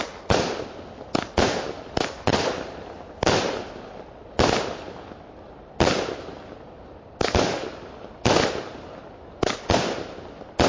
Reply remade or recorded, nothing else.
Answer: recorded